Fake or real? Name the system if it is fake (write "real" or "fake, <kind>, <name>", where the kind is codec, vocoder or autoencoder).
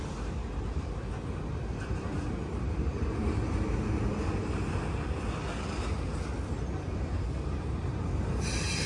real